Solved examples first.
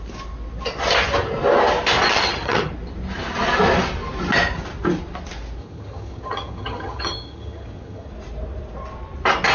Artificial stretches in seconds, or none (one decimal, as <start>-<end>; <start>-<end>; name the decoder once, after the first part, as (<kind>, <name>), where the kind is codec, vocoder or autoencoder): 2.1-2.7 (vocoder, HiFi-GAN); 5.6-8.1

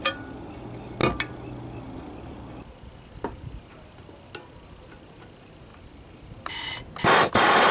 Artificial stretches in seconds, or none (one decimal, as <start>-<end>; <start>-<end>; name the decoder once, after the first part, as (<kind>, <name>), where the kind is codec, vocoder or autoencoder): none

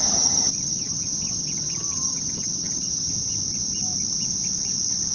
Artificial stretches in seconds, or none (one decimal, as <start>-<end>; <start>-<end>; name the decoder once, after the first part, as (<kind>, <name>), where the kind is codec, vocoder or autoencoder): 0.0-3.1 (vocoder, HiFi-GAN)

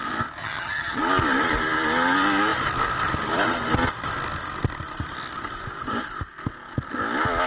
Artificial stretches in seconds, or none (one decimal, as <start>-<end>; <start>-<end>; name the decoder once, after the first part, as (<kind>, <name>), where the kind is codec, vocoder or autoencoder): 0.4-1.0 (vocoder, HiFi-GAN)

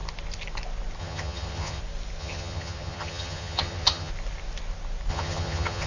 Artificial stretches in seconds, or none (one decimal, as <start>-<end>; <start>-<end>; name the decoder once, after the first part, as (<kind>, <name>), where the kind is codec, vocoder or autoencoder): 1.0-1.8 (vocoder, HiFi-GAN); 2.2-4.1; 5.1-5.9

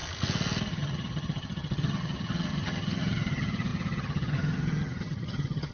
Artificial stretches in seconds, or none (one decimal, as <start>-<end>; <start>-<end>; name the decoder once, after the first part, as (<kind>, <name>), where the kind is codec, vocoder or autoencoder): 0.7-5.7 (vocoder, HiFi-GAN)